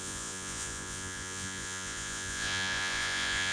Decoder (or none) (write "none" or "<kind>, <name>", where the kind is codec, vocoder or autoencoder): vocoder, Vocos